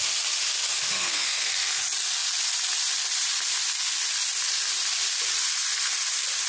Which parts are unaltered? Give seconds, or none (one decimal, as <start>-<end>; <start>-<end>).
0.0-0.9; 1.5-6.5